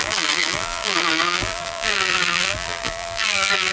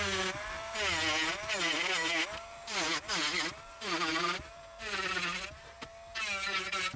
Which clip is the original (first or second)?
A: second